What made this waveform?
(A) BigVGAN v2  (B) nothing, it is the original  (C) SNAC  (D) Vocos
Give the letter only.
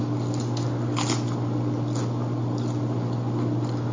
B